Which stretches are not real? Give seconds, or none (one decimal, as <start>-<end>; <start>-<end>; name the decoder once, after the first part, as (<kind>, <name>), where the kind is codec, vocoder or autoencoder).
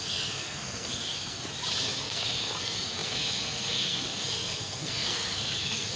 0.0-1.5 (codec, SNAC); 2.0-6.0